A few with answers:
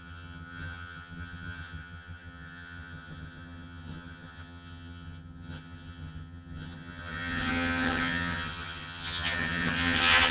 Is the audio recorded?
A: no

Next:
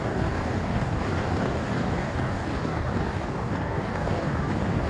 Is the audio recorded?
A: no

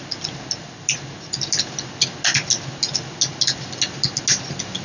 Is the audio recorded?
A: yes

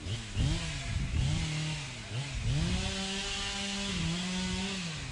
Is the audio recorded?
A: yes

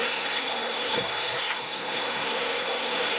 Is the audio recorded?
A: no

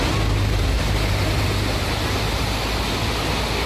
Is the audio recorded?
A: yes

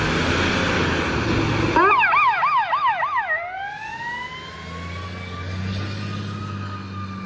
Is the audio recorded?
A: yes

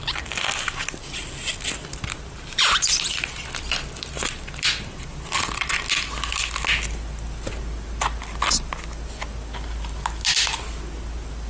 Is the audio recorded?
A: yes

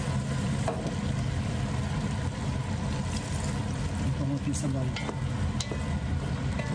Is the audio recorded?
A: yes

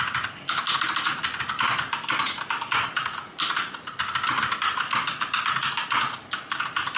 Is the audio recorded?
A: yes